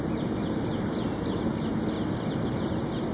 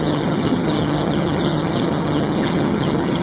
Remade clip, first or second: second